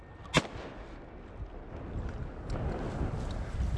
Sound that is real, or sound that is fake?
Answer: real